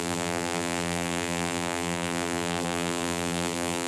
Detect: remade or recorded remade